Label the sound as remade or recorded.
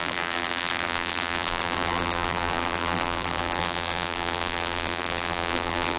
remade